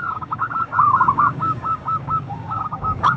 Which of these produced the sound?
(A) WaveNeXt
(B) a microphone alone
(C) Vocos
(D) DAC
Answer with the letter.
D